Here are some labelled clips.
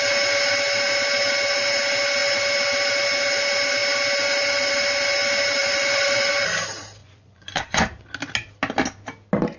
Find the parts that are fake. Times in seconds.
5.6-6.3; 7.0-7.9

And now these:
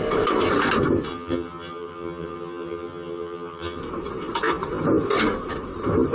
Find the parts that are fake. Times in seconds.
1.1-3.8